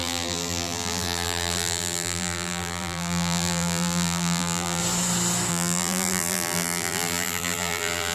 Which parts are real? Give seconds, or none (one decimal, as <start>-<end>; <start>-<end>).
4.8-5.5